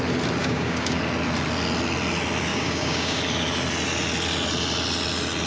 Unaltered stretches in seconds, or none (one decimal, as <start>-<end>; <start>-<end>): 0.0-0.4; 1.0-2.5; 3.2-5.5